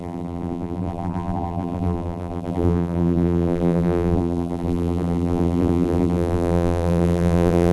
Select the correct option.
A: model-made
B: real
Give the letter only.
A